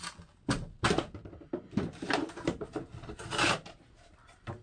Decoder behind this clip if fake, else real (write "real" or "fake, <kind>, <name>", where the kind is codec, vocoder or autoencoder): fake, vocoder, BigVGAN v2